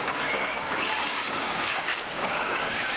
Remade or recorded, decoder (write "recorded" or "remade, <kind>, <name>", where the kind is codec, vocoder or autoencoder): remade, codec, DAC